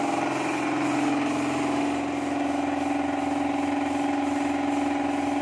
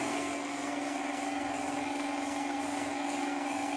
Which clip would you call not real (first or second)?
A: second